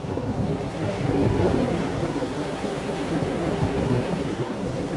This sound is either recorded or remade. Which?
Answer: remade